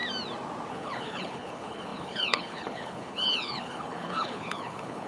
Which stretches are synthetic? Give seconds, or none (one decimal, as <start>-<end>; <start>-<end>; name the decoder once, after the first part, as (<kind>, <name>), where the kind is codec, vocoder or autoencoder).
0.7-5.1 (codec, HILCodec)